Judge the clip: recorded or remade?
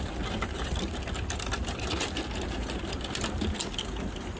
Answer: recorded